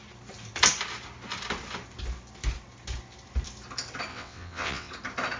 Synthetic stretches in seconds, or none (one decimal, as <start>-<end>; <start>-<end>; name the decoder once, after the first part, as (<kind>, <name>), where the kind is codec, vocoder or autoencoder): 4.1-4.9 (vocoder, WaveNeXt)